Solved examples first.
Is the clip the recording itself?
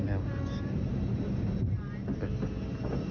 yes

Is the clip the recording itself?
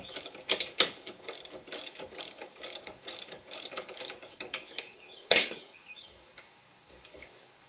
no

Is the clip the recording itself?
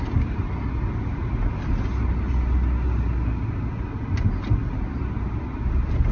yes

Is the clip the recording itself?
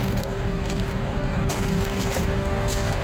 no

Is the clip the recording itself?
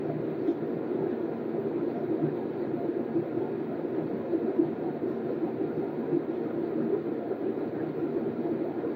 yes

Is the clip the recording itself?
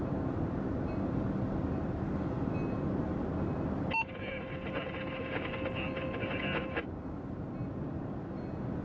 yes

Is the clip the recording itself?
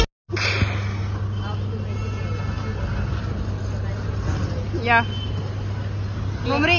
yes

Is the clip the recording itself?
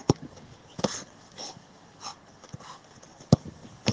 no